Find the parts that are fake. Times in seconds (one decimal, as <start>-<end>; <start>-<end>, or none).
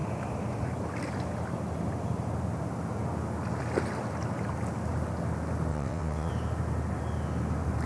5.7-6.3